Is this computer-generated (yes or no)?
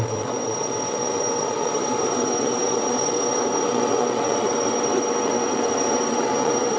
yes